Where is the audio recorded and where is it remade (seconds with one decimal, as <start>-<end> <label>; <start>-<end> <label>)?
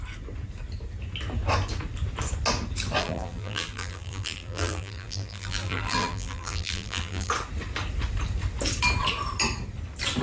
0.0-3.0 recorded; 3.0-7.3 remade; 7.3-10.2 recorded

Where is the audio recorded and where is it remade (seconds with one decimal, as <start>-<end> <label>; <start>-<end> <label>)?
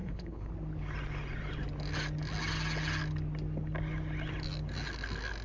0.0-0.5 remade; 0.5-5.4 recorded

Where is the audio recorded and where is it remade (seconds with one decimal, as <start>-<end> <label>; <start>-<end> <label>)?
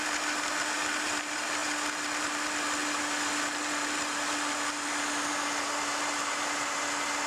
0.0-7.3 recorded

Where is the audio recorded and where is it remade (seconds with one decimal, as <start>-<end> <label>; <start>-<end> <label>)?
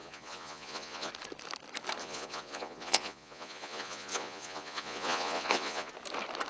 0.0-1.1 remade; 1.1-2.0 recorded; 2.0-5.9 remade; 5.9-6.5 recorded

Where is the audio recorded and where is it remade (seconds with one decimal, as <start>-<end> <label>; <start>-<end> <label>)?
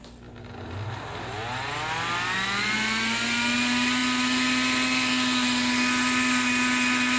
0.0-7.2 recorded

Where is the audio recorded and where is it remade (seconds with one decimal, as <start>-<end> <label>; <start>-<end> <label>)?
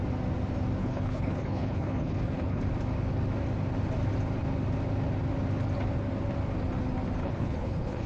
0.0-0.8 recorded; 0.8-2.6 remade; 2.6-7.2 recorded; 7.2-8.1 remade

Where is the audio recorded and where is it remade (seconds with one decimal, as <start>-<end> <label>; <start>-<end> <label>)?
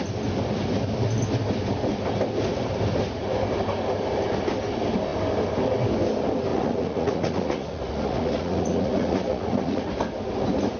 0.0-6.5 recorded; 6.5-9.9 remade; 9.9-10.8 recorded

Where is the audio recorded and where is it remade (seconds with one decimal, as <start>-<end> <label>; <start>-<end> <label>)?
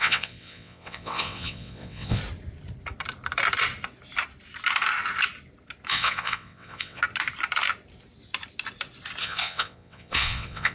0.0-2.2 remade; 2.2-5.9 recorded; 5.9-7.0 remade; 7.0-9.2 recorded; 9.2-10.7 remade